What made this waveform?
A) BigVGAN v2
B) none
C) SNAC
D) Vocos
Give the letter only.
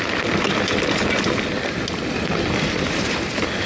B